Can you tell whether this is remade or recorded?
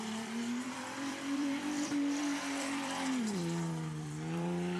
remade